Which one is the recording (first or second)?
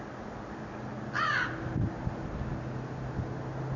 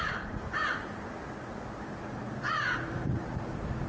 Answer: first